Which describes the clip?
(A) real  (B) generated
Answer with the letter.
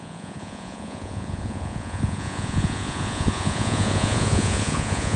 B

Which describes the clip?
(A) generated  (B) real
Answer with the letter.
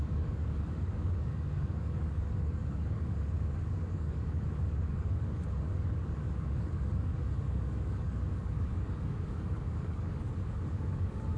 A